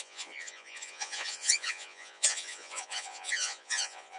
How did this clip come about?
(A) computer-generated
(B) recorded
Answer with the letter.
A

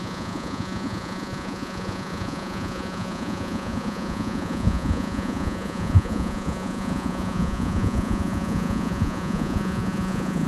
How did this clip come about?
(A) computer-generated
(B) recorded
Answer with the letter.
A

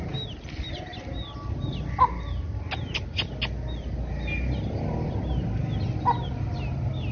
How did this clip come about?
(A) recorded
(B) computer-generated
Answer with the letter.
A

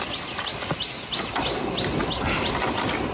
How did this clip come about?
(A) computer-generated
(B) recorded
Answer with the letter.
B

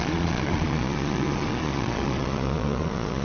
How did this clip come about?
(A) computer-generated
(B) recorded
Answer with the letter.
A